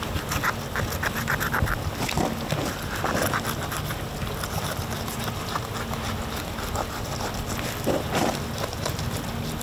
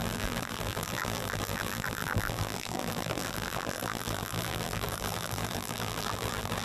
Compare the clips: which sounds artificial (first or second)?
second